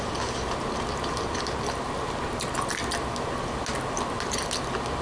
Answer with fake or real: real